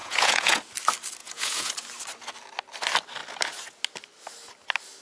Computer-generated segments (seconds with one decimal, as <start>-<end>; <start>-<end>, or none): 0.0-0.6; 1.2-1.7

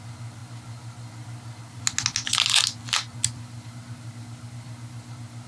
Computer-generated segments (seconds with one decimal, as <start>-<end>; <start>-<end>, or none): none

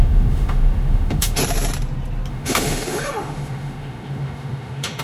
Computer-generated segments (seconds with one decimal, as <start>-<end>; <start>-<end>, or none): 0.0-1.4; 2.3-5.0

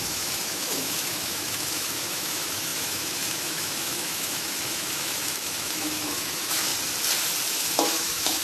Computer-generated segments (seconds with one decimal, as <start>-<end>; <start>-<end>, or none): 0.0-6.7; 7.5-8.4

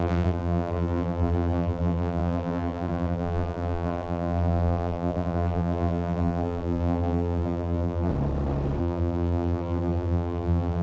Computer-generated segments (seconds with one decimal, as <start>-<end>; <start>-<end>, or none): 0.0-8.1; 8.8-10.8

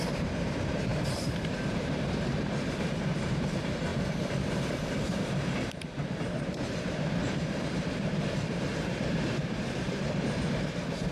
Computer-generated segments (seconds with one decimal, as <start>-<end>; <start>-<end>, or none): 0.0-0.9; 1.5-3.9; 4.5-11.1

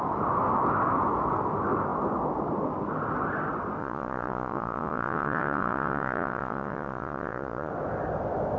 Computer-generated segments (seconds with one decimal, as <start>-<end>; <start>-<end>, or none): 3.8-7.7

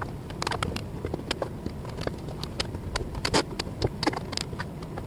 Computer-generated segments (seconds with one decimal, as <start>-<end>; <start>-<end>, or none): none